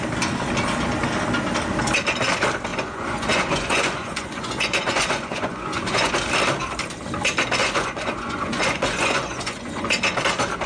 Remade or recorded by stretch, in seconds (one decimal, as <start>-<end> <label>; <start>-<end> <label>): 0.0-2.7 recorded; 2.7-6.1 remade; 6.1-7.6 recorded; 7.6-9.9 remade; 9.9-10.7 recorded